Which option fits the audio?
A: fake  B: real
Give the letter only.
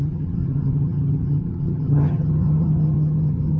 A